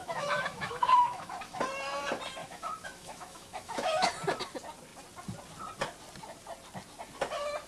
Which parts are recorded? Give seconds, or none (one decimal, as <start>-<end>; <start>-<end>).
1.6-2.4; 4.1-7.7